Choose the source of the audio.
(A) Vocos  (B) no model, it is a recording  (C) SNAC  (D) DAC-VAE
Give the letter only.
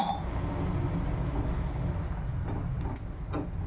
B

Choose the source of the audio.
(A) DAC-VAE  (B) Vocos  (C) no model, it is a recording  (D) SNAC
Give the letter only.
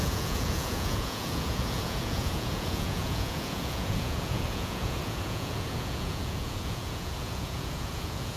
B